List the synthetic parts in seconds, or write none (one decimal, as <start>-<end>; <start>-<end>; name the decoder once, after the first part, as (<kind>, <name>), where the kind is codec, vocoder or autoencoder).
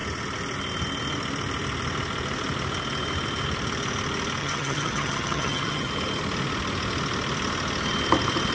4.4-5.9 (vocoder, HiFi-GAN)